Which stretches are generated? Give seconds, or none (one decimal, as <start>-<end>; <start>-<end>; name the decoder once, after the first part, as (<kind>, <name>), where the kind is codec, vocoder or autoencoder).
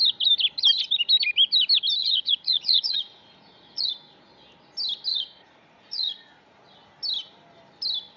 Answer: 2.0-3.9 (vocoder, Vocos); 5.1-6.6